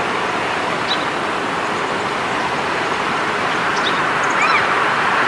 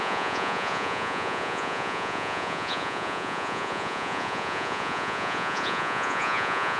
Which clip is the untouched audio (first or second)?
first